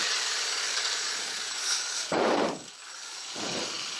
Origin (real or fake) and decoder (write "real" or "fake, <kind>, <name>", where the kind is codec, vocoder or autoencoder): fake, codec, DAC